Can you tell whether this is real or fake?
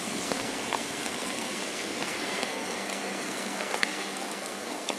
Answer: fake